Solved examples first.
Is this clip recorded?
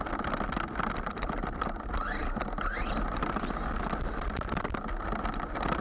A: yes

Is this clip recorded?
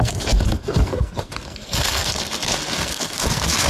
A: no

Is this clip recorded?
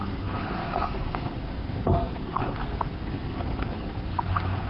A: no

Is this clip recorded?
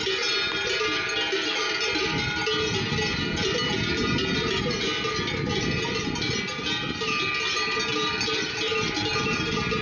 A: yes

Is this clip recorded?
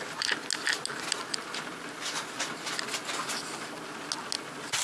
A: yes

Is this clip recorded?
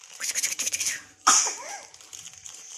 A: no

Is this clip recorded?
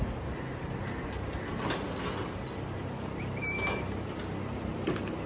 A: yes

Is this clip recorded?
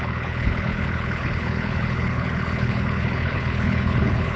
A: no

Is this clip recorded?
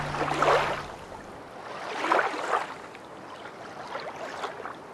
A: yes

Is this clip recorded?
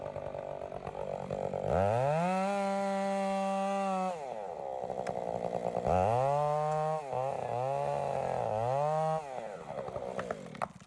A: yes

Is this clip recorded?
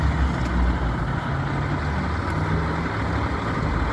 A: yes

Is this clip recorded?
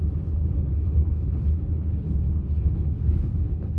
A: no